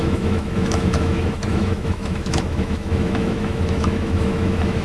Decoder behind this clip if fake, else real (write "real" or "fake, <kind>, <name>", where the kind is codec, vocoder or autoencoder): fake, autoencoder, DAC-VAE